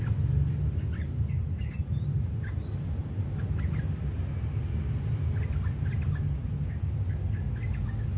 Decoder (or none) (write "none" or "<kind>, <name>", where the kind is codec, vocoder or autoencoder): none